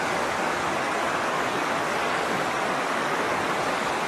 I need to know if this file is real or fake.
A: fake